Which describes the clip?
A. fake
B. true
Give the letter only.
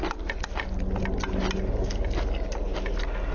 B